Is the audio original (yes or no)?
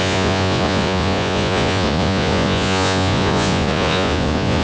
no